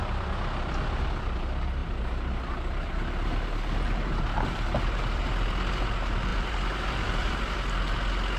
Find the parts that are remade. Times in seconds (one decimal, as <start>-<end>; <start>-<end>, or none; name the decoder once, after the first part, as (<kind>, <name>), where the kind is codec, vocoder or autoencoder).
6.3-7.3 (vocoder, BigVGAN v2)